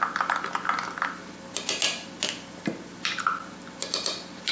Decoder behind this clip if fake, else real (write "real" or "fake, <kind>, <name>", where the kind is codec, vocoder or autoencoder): real